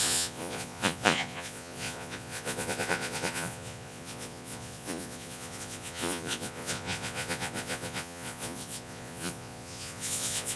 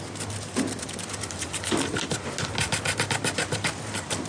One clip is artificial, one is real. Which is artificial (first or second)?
first